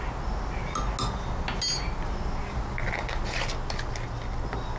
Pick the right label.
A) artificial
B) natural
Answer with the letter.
B